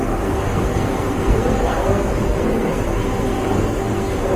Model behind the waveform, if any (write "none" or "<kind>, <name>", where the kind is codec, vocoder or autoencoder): codec, SNAC